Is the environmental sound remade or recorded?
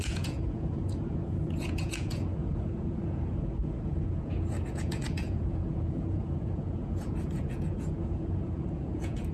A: remade